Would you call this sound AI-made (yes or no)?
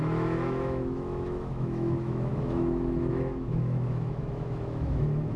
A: yes